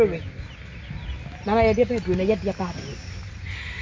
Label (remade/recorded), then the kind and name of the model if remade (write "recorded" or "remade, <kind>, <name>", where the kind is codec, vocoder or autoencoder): recorded